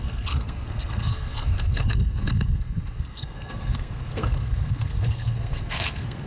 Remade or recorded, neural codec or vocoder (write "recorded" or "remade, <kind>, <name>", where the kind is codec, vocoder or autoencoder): remade, codec, SNAC